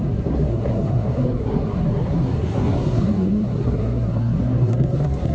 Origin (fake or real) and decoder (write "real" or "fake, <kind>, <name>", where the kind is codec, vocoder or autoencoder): fake, codec, SNAC